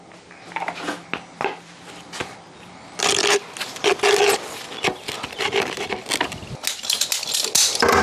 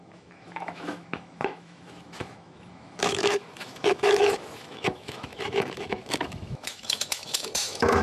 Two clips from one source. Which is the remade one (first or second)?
second